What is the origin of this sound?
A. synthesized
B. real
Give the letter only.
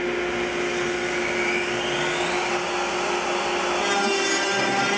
B